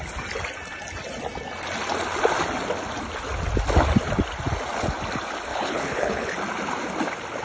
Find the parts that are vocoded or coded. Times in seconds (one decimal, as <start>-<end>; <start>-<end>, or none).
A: 5.5-6.3

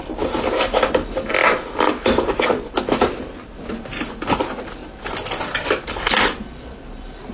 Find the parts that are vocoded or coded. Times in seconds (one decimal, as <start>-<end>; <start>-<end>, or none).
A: none

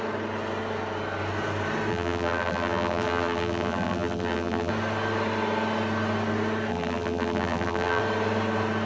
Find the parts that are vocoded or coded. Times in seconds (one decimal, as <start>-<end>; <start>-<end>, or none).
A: 1.9-4.7; 6.7-8.0

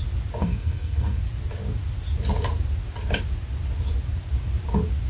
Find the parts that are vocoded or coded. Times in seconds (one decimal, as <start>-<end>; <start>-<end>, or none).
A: 0.4-1.2

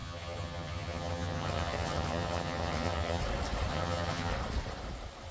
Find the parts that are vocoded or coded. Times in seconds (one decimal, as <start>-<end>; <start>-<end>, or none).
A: 0.0-3.2; 3.7-4.3

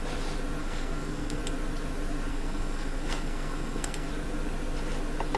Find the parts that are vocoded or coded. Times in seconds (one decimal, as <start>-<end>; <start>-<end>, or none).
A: 0.6-1.4; 2.3-4.1